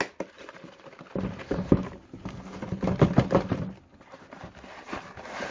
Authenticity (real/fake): real